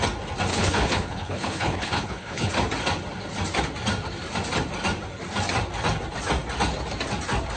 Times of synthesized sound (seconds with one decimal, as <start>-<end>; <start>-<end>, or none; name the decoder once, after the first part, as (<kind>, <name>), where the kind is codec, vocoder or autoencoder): 0.5-2.5 (codec, HILCodec)